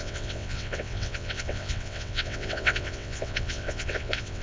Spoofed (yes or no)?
yes